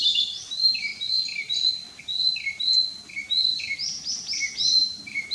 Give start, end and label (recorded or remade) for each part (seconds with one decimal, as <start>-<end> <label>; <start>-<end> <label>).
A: 0.0-0.9 remade; 0.9-4.1 recorded; 4.1-5.3 remade